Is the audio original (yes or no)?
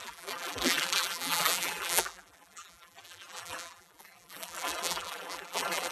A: no